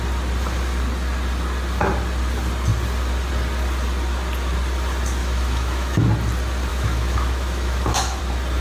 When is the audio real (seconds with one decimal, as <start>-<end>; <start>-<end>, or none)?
0.0-5.2; 6.1-6.7; 8.2-8.6